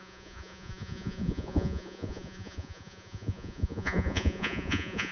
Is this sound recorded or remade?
remade